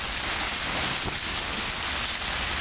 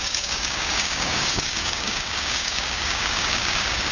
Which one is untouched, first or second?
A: first